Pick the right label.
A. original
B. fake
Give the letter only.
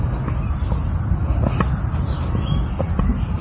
A